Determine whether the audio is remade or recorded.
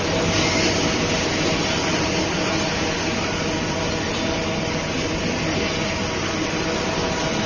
recorded